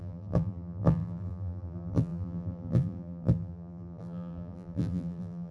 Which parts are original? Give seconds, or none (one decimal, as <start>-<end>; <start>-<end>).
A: none